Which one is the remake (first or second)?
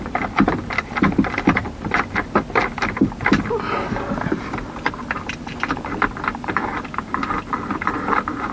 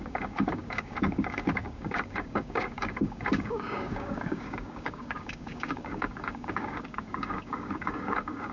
second